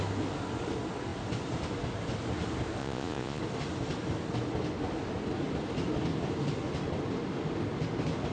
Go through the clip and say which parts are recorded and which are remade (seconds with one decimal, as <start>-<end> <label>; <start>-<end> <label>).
0.0-2.8 recorded; 2.8-3.4 remade; 3.4-8.3 recorded